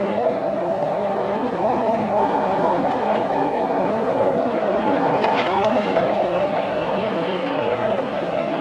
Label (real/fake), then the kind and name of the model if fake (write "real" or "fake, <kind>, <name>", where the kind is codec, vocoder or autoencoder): fake, codec, SNAC